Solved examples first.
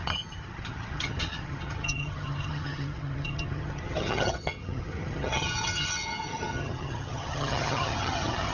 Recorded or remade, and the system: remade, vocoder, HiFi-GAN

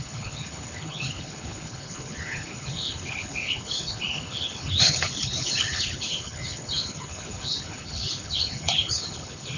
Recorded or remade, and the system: remade, codec, HILCodec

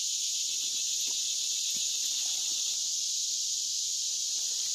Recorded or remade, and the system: recorded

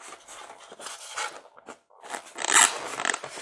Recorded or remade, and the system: recorded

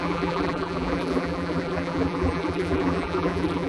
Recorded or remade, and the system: remade, vocoder, BigVGAN v2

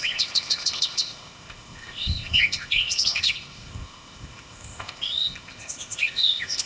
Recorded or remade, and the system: remade, codec, ZipCodec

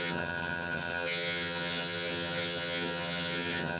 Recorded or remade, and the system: remade, vocoder, HiFi-GAN